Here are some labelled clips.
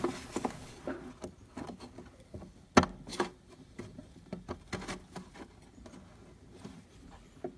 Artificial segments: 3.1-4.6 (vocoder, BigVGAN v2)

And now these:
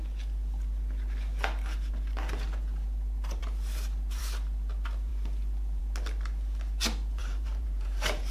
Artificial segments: 7.2-8.3 (vocoder, BigVGAN v2)

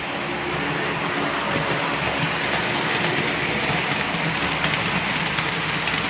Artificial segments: none

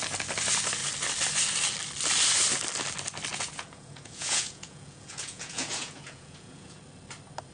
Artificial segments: 3.3-6.8 (vocoder, Vocos)

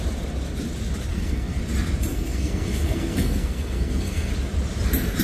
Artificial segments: 1.1-1.6 (codec, SNAC); 2.1-4.3

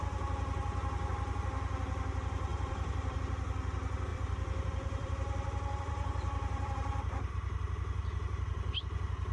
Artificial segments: 2.5-3.2 (vocoder, BigVGAN v2); 4.1-7.3

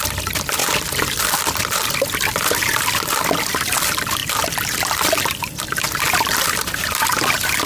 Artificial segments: 0.0-0.6 (vocoder, BigVGAN v2); 1.2-2.7; 3.5-7.7

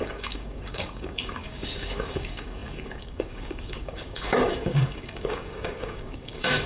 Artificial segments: 0.0-6.7 (codec, DAC)